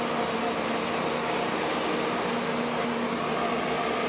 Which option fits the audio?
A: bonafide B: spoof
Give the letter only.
A